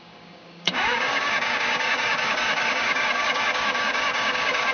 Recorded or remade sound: remade